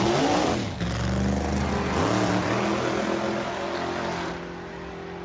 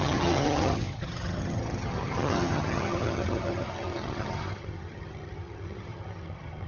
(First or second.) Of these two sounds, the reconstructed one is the second